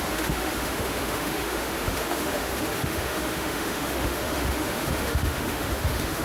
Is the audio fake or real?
fake